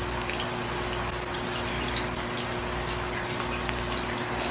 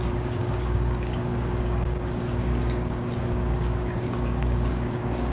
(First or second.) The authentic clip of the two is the first